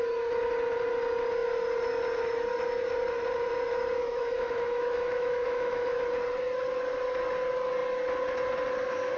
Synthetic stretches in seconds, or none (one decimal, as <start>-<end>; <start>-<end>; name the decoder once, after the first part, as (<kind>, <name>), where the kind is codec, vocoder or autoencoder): 4.0-6.0 (autoencoder, DAC-VAE)